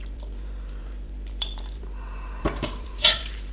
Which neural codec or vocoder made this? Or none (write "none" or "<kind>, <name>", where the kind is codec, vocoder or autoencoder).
vocoder, BigVGAN v2